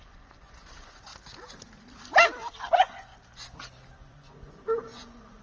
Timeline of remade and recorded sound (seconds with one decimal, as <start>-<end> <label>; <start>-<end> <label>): 0.0-1.1 remade; 1.1-2.7 recorded; 2.7-3.1 remade; 3.1-3.9 recorded; 3.9-5.4 remade